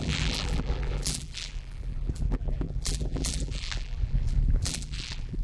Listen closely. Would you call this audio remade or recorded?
remade